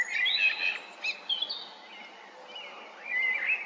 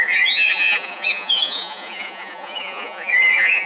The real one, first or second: first